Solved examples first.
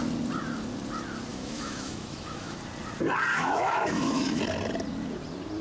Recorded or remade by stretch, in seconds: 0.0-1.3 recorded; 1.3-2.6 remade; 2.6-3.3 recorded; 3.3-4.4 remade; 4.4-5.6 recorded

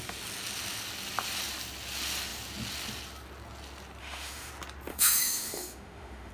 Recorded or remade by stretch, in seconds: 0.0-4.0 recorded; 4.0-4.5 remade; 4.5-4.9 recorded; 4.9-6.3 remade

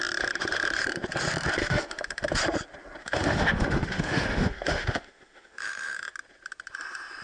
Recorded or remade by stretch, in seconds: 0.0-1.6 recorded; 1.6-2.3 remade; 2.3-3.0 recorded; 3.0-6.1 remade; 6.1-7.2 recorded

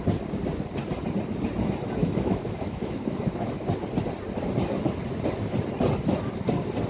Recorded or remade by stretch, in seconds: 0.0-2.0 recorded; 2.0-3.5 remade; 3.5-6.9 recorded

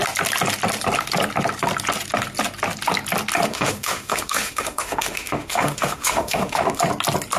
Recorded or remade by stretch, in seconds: 0.0-3.5 recorded; 3.5-6.8 remade; 6.8-7.4 recorded